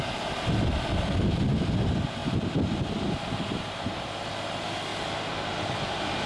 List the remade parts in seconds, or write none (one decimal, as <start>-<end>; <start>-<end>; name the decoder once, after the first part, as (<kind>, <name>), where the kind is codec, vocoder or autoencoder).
none